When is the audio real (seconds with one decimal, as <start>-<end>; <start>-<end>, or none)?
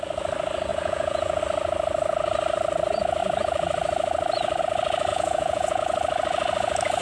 0.0-0.7; 1.4-5.1; 5.8-7.0